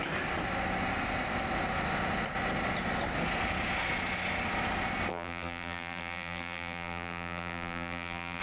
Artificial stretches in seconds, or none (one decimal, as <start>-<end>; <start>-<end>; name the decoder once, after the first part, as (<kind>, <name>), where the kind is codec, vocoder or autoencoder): 5.1-8.4 (vocoder, BigVGAN v2)